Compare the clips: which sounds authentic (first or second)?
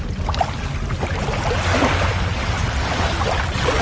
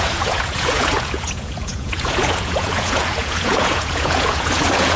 first